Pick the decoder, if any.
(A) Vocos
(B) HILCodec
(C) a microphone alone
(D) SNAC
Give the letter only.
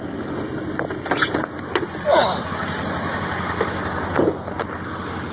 C